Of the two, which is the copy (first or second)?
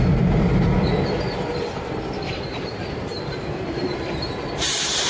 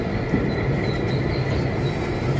first